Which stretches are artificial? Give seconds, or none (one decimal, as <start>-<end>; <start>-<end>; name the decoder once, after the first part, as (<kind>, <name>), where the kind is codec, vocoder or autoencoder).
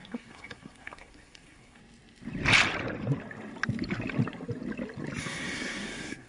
0.0-1.8 (codec, SNAC); 5.2-6.3